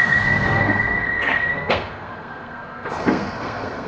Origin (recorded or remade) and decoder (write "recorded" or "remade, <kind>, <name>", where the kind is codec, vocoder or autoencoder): remade, codec, SNAC